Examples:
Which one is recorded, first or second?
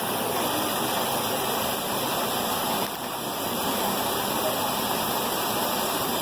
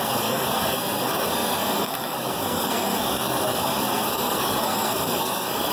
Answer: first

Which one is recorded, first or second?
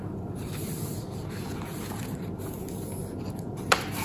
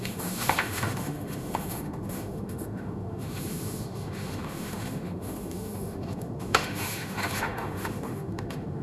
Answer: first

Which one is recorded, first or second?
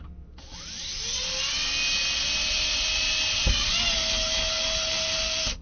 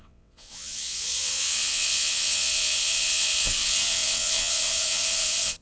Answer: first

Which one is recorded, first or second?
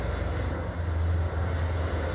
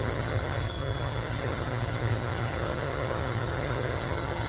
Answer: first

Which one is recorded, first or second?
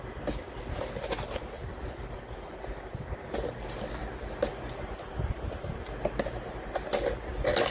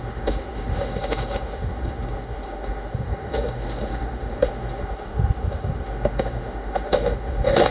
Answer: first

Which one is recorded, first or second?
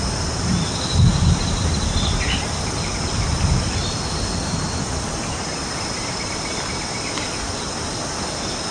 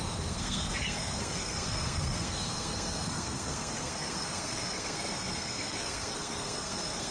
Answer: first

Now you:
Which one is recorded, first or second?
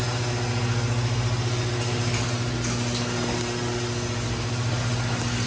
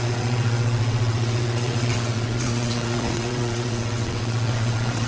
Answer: first